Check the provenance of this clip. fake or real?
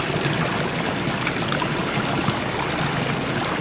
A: real